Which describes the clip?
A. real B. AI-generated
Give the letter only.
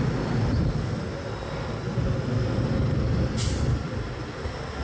A